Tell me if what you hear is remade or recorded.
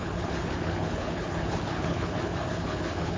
remade